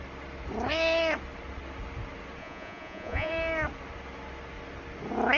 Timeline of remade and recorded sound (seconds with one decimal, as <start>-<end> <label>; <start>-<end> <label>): 0.0-2.4 recorded; 2.4-3.3 remade; 3.3-5.4 recorded